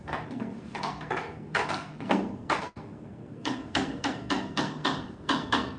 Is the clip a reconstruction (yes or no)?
yes